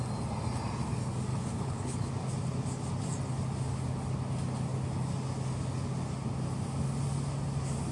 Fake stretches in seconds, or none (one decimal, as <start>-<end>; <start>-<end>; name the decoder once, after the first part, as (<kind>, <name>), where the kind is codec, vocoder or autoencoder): 1.3-2.1 (codec, HILCodec)